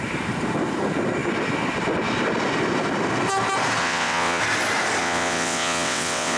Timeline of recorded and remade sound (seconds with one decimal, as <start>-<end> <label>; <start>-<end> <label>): 0.0-3.8 recorded; 3.8-4.4 remade; 4.4-5.0 recorded; 5.0-6.4 remade